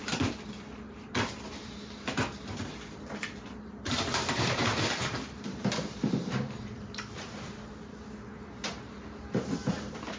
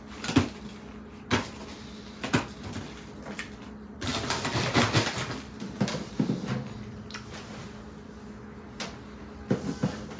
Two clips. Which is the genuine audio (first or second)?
second